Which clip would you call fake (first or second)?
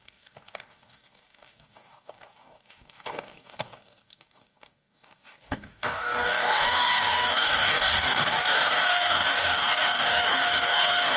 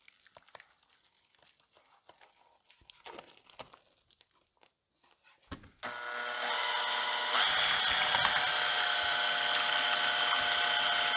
first